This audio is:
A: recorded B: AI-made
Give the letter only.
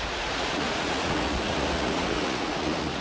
B